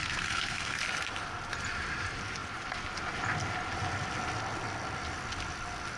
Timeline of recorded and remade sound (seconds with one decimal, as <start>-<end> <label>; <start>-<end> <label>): 0.0-0.8 remade; 0.8-6.0 recorded